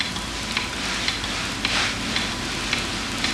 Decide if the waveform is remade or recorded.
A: recorded